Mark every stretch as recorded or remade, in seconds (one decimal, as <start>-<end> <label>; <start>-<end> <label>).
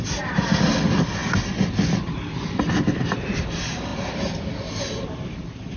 0.0-5.8 recorded